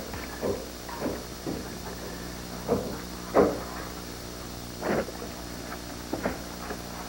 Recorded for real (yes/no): yes